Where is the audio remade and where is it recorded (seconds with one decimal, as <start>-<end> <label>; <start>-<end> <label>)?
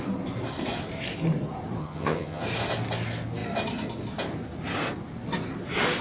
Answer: 0.0-1.8 recorded; 1.8-2.4 remade; 2.4-6.0 recorded